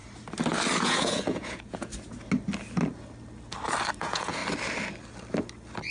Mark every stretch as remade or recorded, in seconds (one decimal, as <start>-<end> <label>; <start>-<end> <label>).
0.0-0.8 recorded; 0.8-1.9 remade; 1.9-4.0 recorded; 4.0-4.4 remade; 4.4-5.9 recorded

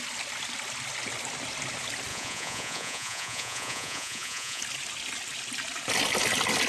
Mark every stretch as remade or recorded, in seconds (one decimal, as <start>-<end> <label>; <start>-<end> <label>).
0.0-2.1 recorded; 2.1-4.6 remade; 4.6-6.7 recorded

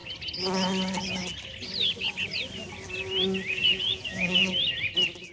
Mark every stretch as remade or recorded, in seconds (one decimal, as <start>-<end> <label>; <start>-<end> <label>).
0.0-3.6 recorded; 3.6-4.5 remade; 4.5-5.3 recorded

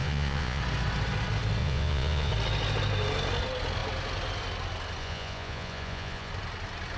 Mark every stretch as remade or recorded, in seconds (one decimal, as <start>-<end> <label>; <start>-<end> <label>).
0.0-0.6 remade; 0.6-1.6 recorded; 1.6-2.3 remade; 2.3-5.0 recorded; 5.0-6.3 remade; 6.3-7.0 recorded

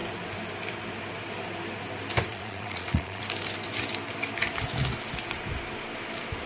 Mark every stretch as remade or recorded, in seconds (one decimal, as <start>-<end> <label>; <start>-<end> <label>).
0.0-2.3 recorded; 2.3-3.2 remade; 3.2-6.5 recorded

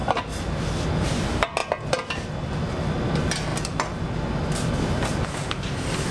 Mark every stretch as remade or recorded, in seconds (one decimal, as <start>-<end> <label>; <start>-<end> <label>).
0.0-6.1 recorded

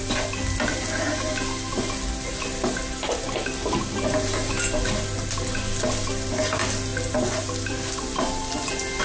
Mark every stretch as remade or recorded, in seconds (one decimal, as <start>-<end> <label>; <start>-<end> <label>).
0.0-9.0 recorded

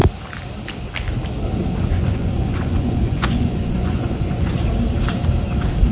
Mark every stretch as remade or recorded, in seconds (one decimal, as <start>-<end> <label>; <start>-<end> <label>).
0.0-1.9 recorded; 1.9-4.7 remade; 4.7-5.9 recorded